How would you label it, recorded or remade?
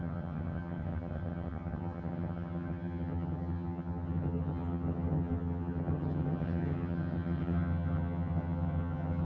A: remade